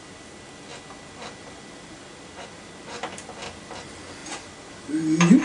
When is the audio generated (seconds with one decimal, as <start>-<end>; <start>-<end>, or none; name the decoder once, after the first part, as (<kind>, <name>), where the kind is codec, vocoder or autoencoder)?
4.2-4.7 (vocoder, BigVGAN v2)